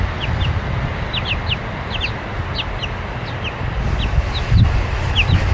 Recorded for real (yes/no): yes